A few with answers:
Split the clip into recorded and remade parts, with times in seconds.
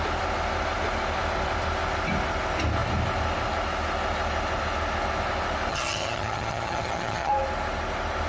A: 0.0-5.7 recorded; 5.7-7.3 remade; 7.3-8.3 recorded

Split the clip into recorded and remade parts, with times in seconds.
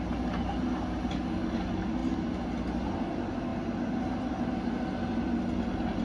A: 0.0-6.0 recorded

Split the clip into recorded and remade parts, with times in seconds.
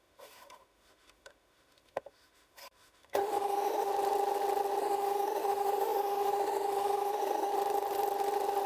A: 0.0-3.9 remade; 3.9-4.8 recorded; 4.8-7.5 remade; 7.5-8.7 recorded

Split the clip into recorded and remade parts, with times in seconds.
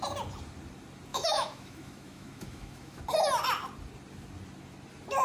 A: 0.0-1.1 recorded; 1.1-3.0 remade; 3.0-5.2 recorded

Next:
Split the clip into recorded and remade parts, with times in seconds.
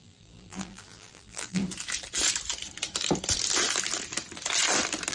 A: 0.0-1.6 remade; 1.6-5.1 recorded